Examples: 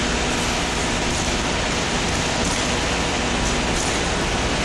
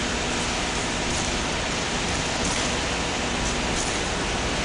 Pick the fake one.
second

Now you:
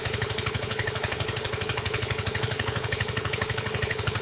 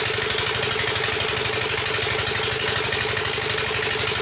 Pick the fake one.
first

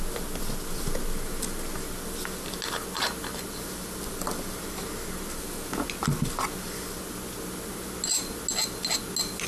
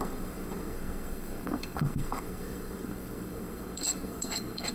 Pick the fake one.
second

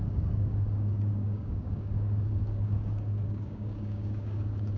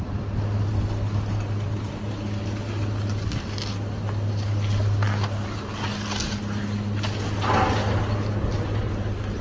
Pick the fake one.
first